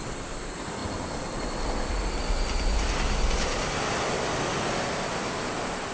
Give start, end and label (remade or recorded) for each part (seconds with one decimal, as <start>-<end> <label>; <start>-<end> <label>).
0.0-5.9 recorded

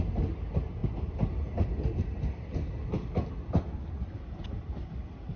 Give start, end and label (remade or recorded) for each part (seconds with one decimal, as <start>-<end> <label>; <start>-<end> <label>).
0.0-5.4 recorded